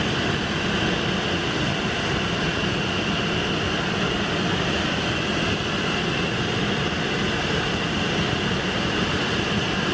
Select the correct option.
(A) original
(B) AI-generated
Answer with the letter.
A